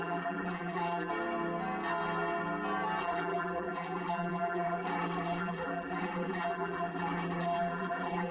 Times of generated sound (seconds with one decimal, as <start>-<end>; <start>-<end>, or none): 0.0-1.1; 3.0-8.3